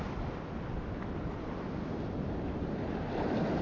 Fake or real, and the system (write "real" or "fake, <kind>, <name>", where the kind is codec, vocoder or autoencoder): real